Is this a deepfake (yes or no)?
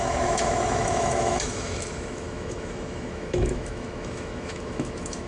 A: yes